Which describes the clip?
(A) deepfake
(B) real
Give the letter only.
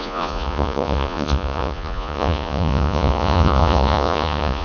A